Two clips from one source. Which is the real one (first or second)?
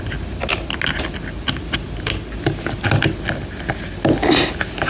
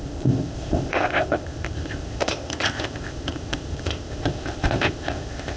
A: first